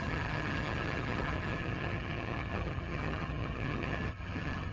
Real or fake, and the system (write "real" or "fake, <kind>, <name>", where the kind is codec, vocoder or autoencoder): fake, vocoder, HiFi-GAN